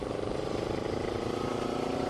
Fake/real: fake